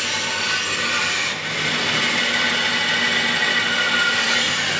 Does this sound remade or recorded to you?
recorded